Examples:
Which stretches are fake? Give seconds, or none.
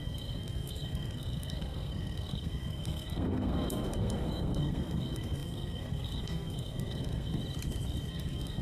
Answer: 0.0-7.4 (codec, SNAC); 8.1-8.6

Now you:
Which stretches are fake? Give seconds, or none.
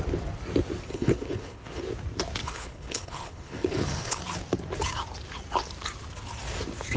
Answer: 0.9-1.8 (codec, HILCodec); 2.4-4.2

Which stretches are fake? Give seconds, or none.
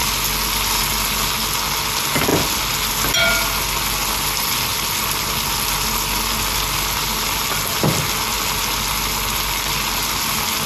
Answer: none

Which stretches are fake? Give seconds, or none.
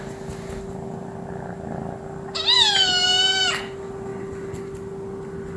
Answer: none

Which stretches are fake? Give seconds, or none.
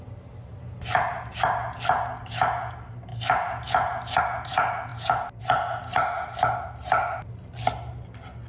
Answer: none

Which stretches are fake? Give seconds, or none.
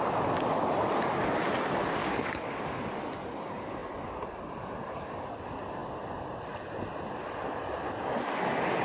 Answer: 2.0-2.7 (codec, DAC)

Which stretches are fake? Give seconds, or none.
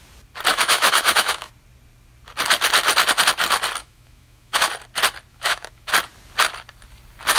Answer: 0.5-1.5 (autoencoder, DAC-VAE); 3.8-4.7; 5.3-5.9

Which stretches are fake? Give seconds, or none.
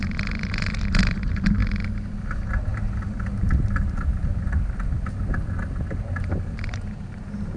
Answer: none